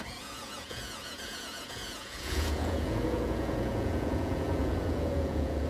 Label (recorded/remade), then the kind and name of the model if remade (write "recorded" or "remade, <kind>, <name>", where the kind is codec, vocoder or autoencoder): remade, vocoder, Vocos